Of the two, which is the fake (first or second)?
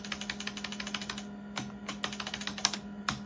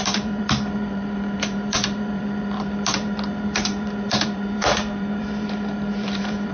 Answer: second